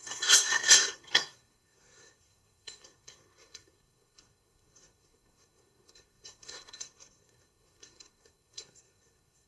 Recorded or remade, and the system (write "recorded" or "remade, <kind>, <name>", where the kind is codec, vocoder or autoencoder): remade, codec, SNAC